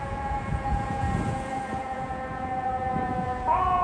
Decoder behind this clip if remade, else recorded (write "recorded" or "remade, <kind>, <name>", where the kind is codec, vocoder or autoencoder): remade, vocoder, Vocos